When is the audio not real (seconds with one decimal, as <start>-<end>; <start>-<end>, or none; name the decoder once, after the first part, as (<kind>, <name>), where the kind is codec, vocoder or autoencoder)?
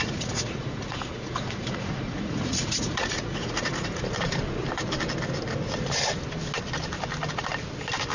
0.0-4.0 (vocoder, Vocos)